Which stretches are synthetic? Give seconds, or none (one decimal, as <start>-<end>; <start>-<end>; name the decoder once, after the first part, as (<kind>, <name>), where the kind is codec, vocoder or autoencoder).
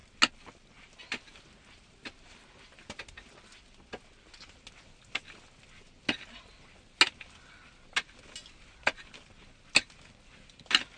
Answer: none